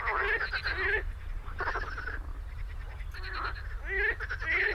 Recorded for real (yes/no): yes